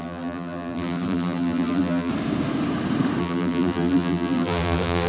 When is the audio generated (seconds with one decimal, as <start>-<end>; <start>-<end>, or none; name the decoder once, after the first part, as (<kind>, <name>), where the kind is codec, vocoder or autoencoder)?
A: 0.0-2.1 (vocoder, BigVGAN v2); 3.2-5.1